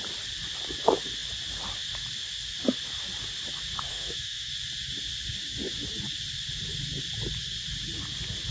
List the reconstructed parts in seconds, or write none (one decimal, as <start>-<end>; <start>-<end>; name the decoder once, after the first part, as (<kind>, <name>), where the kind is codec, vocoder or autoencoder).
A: 3.9-4.5 (autoencoder, DAC-VAE)